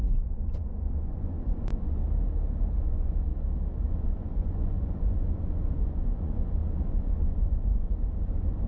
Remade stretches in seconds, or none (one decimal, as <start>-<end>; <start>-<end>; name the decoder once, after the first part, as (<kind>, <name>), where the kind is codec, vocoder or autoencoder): 0.0-2.0 (vocoder, Vocos); 2.8-3.3; 3.9-8.7